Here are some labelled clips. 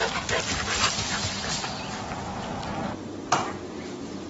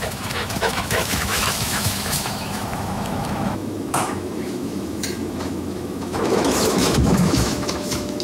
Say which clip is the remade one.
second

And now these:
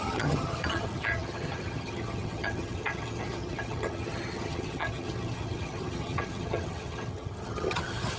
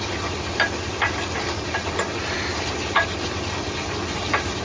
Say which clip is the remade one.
first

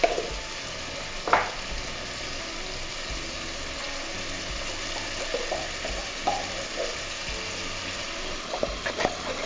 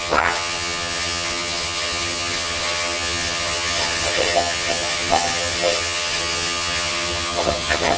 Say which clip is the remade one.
second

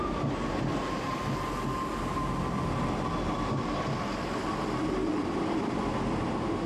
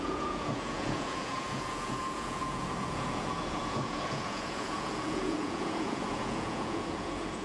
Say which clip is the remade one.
second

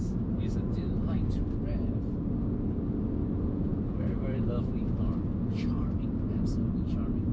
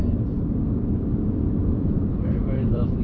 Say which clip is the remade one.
second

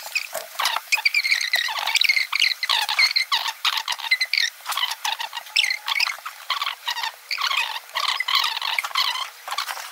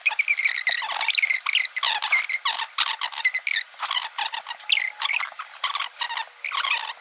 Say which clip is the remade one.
first